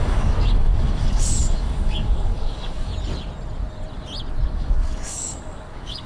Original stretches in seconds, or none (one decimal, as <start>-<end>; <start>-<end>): 2.9-4.5